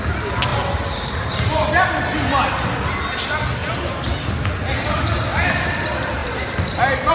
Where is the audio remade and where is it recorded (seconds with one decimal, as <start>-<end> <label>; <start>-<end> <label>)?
0.0-7.1 recorded